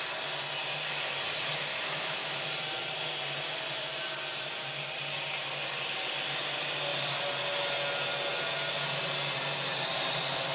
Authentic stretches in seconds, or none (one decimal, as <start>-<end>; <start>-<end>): 0.0-1.7; 2.5-10.5